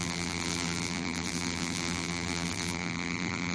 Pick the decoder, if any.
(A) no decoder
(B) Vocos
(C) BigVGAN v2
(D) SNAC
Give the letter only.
C